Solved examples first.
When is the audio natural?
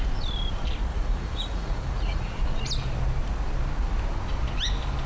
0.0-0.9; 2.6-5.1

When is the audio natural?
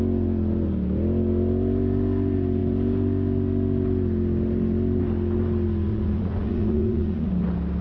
0.0-5.9; 7.3-7.8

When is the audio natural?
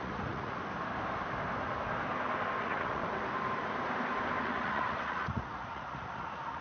0.6-2.6; 3.0-4.4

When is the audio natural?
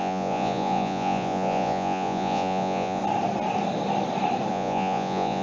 3.0-4.5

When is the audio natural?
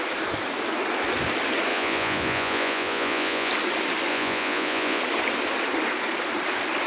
0.0-1.7; 3.5-4.1; 5.0-6.9